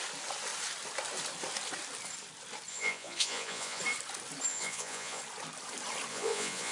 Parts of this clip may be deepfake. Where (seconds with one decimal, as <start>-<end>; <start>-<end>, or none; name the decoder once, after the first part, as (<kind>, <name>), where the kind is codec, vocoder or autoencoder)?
2.7-3.8 (vocoder, Vocos); 4.5-5.2; 6.1-6.7